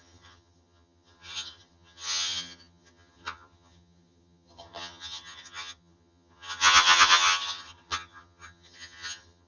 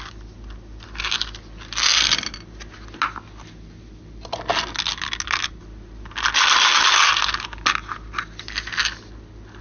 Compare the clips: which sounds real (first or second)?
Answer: second